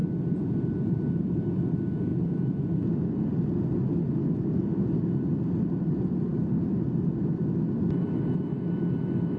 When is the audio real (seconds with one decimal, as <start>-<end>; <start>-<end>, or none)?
0.0-0.7; 2.1-3.2